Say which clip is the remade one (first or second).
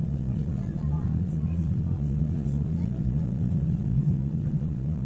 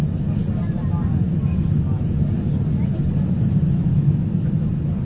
first